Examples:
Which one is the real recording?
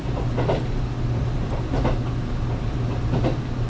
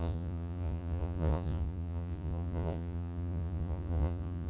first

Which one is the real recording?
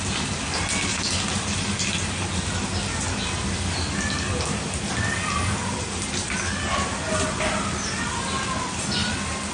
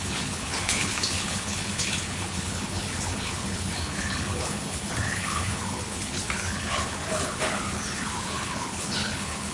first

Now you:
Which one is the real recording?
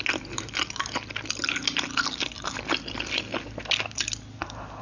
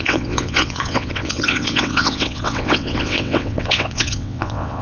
first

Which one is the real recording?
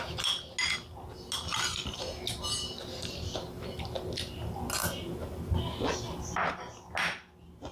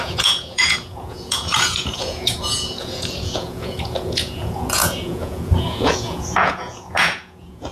first